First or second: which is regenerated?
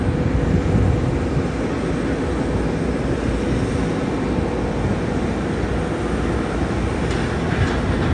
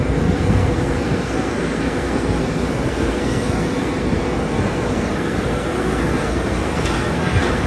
second